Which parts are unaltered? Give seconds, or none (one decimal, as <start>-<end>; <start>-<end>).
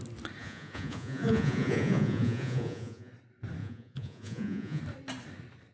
0.0-0.4; 3.1-3.6; 4.8-5.7